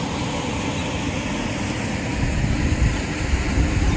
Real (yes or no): yes